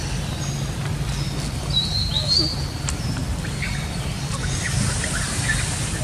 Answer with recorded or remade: recorded